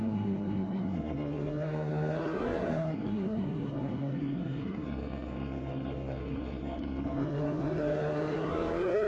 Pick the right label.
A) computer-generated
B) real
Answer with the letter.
A